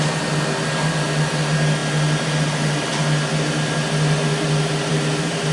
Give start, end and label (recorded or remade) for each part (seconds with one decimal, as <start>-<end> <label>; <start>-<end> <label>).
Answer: 0.0-5.5 recorded